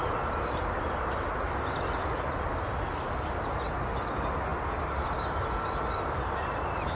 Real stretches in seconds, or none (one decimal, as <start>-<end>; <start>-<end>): 0.0-7.0